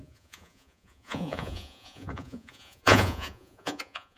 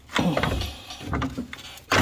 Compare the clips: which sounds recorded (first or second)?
second